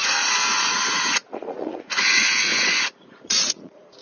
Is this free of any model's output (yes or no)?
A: no